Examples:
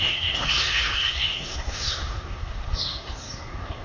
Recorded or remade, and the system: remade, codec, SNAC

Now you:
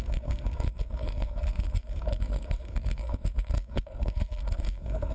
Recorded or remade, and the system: remade, codec, SNAC